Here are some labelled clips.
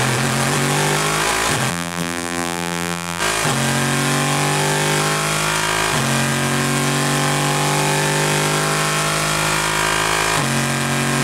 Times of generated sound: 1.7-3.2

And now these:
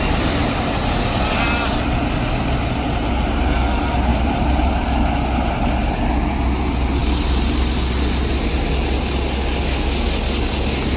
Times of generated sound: 4.1-4.7

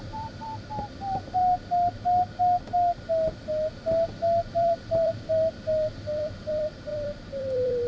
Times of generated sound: 0.0-1.4; 4.5-7.9

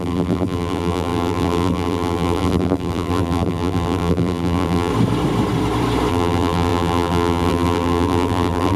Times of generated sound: 0.0-4.9; 6.1-8.8